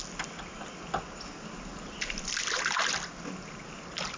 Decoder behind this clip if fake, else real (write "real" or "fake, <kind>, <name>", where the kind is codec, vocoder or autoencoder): real